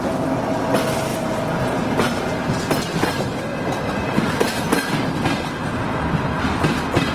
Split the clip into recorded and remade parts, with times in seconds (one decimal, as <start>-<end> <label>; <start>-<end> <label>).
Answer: 0.0-4.0 recorded; 4.0-4.5 remade; 4.5-7.1 recorded